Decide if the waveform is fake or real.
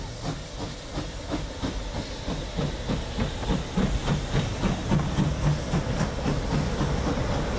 real